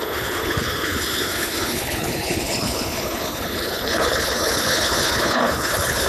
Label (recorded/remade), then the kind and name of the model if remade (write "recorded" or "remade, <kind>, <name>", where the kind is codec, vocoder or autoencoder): remade, codec, HILCodec